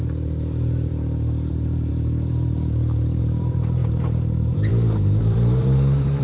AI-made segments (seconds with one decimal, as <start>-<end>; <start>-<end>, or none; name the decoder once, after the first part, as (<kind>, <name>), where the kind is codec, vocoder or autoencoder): 0.0-0.9 (vocoder, BigVGAN v2); 1.5-1.9; 3.2-6.2